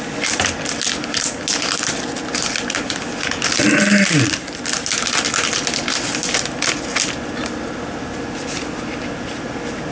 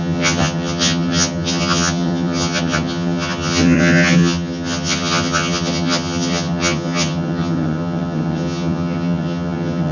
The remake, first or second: second